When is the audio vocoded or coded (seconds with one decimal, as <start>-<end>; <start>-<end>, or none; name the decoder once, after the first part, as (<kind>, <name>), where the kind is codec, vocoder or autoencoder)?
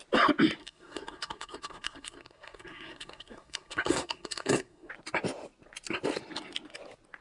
0.6-4.9 (codec, SNAC)